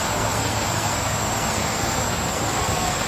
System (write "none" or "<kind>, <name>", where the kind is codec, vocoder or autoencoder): codec, SNAC